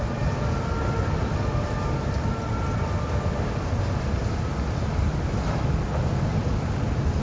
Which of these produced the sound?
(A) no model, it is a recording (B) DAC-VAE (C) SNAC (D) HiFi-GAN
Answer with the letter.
A